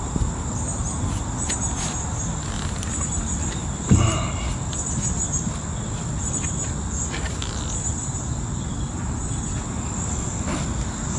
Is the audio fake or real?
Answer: real